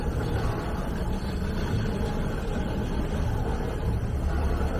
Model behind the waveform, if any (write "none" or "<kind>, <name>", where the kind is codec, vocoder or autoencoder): none